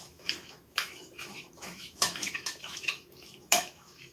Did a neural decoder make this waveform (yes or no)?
yes